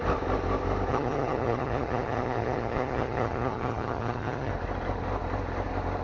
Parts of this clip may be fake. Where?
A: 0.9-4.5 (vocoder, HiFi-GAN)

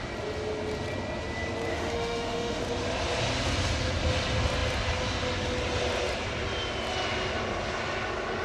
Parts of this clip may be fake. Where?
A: 1.7-2.6 (autoencoder, DAC-VAE)

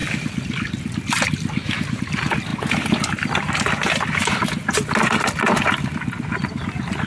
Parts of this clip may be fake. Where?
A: none